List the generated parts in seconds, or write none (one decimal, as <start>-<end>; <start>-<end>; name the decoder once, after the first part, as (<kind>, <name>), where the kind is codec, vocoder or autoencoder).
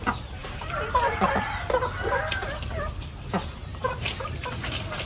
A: 0.4-1.3 (vocoder, BigVGAN v2); 3.7-5.1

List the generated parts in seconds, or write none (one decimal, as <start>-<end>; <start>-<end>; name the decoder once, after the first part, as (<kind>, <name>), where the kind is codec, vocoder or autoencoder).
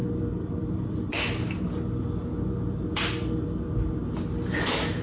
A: none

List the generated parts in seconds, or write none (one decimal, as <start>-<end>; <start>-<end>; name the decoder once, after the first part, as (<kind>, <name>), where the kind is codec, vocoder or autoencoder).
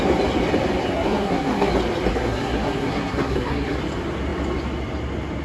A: 0.8-1.7 (codec, SNAC); 2.1-3.8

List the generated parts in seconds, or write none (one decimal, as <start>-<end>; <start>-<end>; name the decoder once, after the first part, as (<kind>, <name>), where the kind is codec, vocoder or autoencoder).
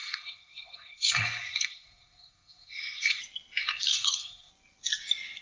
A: 0.0-3.2 (codec, SNAC); 3.6-4.5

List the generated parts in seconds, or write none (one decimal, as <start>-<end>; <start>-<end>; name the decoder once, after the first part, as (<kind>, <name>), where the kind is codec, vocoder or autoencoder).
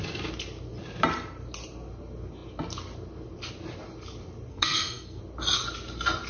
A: 4.5-5.2 (codec, SNAC)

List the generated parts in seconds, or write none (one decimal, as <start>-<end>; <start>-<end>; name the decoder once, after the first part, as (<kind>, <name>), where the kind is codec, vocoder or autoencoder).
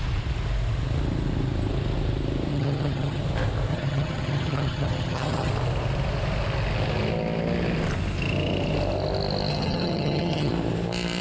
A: 2.5-3.2 (vocoder, HiFi-GAN); 3.7-5.5; 9.5-10.5